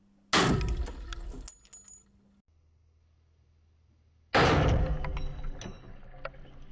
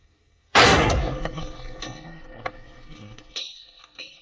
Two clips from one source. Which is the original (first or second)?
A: first